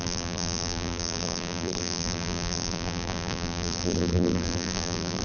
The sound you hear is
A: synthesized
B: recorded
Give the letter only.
A